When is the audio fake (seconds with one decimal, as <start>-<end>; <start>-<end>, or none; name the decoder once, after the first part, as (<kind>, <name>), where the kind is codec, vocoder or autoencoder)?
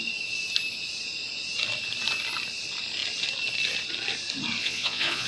4.6-5.3 (vocoder, Vocos)